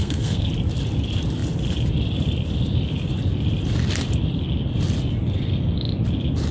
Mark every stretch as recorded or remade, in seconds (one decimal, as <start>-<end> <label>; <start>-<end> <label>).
0.0-0.5 remade; 0.5-6.5 recorded